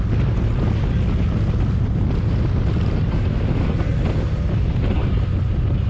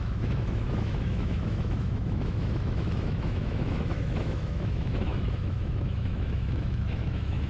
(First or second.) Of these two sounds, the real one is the first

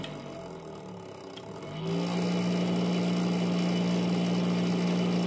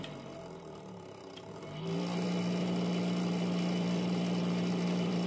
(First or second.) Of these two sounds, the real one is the first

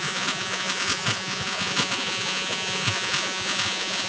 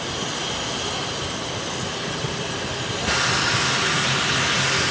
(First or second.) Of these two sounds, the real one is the second